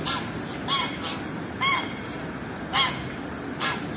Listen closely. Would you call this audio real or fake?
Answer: real